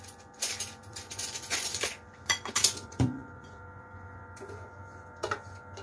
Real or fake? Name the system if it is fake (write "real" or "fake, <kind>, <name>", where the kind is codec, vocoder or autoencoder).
fake, vocoder, Vocos